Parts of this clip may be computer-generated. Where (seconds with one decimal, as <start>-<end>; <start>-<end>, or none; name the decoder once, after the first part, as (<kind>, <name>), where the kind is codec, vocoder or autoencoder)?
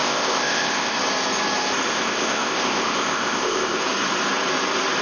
0.0-1.0 (codec, ZipCodec); 1.9-3.8